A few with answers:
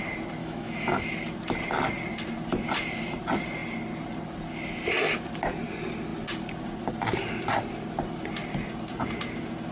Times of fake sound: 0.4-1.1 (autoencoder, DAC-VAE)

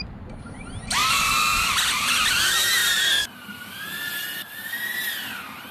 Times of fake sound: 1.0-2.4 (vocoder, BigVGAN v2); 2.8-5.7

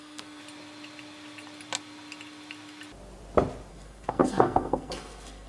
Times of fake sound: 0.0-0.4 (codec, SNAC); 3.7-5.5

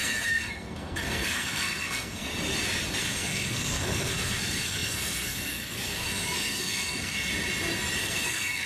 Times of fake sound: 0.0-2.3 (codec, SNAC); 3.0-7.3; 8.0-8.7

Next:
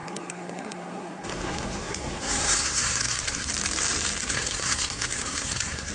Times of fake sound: 0.0-3.5 (codec, SNAC); 4.2-5.9

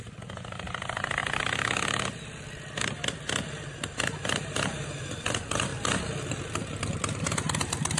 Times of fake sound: none